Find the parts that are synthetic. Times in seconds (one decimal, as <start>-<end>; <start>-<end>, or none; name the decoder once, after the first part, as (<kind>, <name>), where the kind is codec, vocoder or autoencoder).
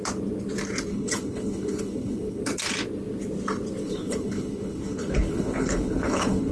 0.9-2.4 (codec, HILCodec); 3.8-6.5